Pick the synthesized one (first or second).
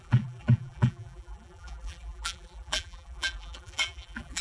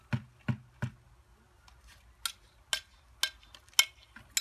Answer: first